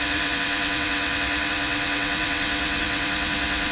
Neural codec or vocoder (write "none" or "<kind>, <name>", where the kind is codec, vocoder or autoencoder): vocoder, WaveNeXt